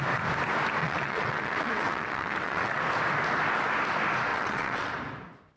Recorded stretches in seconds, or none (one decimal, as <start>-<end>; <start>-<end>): 0.0-0.8; 2.8-4.3; 4.9-5.6